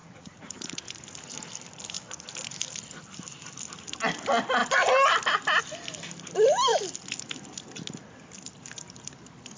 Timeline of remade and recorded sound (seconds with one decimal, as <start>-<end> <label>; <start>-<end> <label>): 0.0-0.8 remade; 0.8-9.6 recorded